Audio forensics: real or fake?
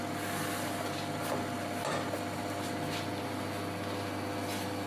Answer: real